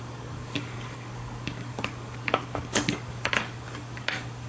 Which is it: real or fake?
fake